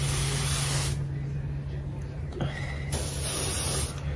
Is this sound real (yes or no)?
yes